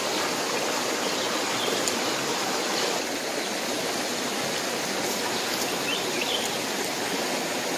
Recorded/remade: recorded